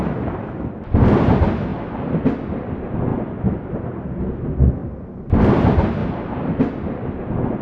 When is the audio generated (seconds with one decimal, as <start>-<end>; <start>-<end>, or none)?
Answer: 6.0-6.5